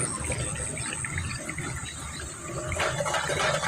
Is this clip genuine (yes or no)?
yes